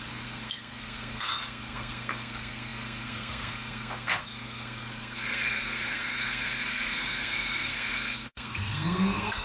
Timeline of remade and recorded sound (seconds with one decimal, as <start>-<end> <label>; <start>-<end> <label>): 0.0-9.4 remade